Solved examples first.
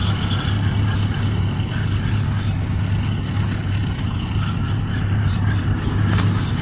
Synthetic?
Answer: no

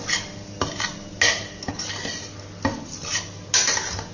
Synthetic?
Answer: no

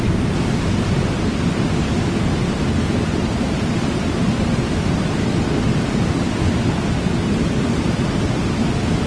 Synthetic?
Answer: no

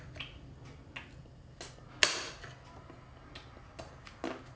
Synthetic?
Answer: no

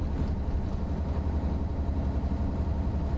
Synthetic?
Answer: no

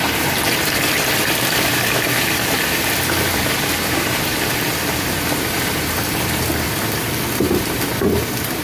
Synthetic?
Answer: yes